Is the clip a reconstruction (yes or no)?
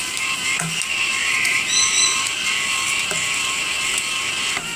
no